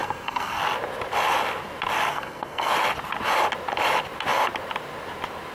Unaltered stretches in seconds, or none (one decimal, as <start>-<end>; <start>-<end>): 0.6-2.1; 2.7-5.5